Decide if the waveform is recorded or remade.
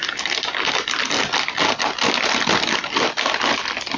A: recorded